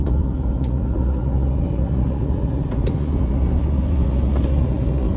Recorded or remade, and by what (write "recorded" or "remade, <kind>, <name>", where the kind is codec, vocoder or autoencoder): remade, vocoder, Vocos